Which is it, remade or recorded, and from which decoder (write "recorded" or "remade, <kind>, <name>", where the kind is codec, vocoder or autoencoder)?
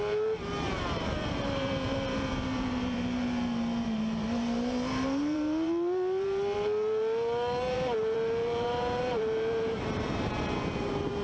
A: remade, vocoder, BigVGAN v2